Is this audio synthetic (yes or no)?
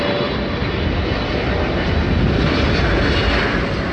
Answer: no